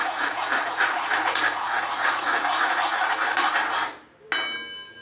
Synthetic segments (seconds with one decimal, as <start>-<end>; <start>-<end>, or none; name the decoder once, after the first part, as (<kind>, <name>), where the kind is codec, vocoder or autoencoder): 0.0-3.0 (vocoder, Vocos)